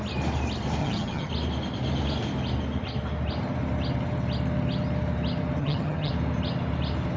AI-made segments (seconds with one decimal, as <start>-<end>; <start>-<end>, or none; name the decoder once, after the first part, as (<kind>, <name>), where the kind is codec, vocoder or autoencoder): 0.8-1.3 (vocoder, HiFi-GAN); 5.6-6.1